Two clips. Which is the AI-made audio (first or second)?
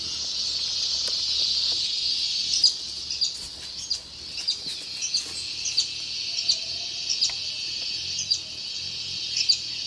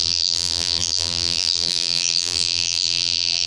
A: second